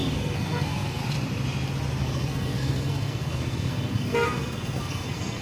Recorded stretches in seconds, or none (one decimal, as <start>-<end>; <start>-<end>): 1.0-2.0